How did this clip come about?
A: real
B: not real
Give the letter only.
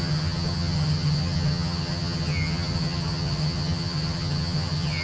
B